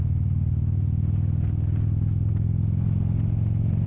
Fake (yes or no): no